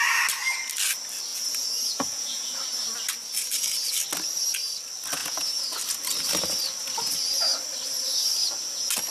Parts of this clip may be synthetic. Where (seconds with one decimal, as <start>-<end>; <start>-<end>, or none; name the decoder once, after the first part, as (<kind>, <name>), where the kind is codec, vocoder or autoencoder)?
1.3-2.6 (vocoder, Vocos); 5.2-5.8